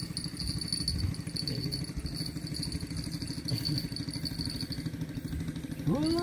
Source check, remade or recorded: recorded